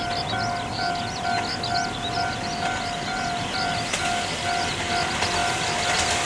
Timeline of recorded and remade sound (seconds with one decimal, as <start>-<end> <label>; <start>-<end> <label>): 0.0-6.3 recorded